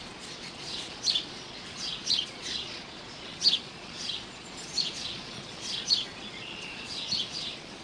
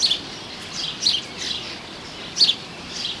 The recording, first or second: second